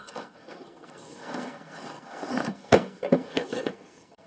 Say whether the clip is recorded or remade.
remade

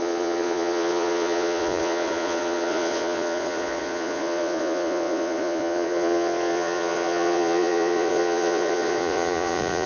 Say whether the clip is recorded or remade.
remade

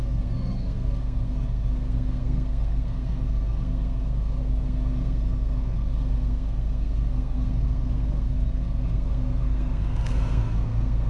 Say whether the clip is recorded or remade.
remade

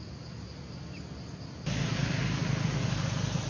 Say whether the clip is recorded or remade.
recorded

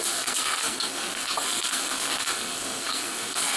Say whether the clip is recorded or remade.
remade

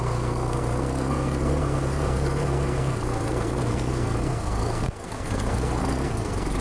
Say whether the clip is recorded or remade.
remade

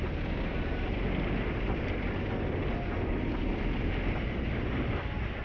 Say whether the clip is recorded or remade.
recorded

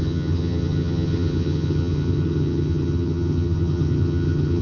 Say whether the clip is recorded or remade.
remade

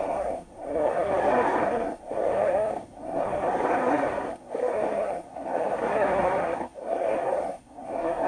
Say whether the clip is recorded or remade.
remade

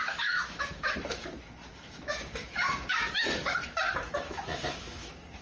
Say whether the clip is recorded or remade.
remade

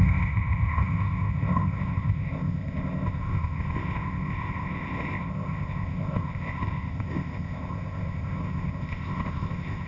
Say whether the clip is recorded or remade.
remade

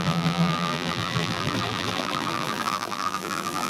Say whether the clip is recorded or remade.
remade